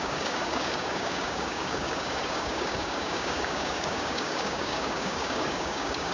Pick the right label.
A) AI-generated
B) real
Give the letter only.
A